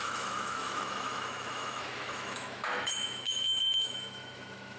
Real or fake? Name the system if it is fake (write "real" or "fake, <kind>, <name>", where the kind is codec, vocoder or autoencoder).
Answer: fake, autoencoder, DAC-VAE